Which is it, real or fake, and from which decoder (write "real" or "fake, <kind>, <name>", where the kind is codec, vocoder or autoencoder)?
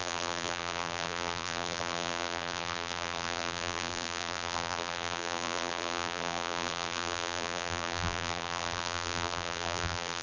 fake, vocoder, BigVGAN v2